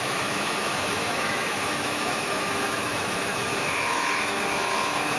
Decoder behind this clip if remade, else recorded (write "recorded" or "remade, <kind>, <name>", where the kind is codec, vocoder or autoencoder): remade, autoencoder, DAC-VAE